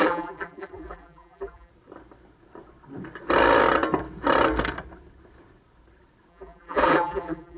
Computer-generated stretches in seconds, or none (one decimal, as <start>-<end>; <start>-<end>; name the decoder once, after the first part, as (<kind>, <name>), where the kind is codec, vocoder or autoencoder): 0.0-1.7 (vocoder, BigVGAN v2); 6.3-7.6